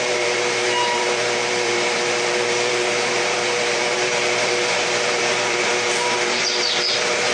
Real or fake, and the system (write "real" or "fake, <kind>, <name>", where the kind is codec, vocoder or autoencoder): fake, vocoder, BigVGAN v2